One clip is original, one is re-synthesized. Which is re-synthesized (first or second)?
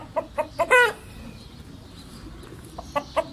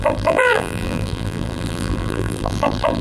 second